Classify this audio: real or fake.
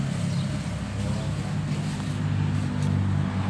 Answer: real